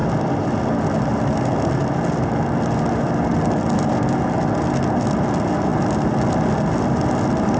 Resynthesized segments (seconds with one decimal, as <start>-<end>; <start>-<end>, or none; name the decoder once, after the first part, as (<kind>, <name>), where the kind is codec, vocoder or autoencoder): none